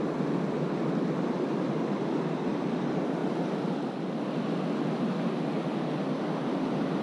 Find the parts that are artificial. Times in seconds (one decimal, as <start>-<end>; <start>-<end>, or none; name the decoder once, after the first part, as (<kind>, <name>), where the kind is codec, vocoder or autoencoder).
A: none